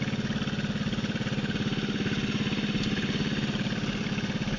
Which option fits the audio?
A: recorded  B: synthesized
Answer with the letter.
A